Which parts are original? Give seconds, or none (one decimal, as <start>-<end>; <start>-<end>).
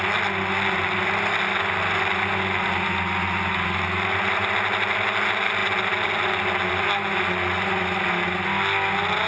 0.0-9.3